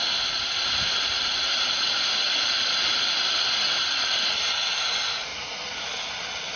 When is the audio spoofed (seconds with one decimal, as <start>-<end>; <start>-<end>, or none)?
1.5-4.2; 5.3-5.9